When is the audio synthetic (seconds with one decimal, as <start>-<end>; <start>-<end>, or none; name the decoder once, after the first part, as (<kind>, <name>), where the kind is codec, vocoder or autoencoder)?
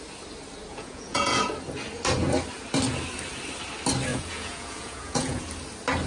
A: 0.7-1.5 (vocoder, Vocos); 4.1-5.4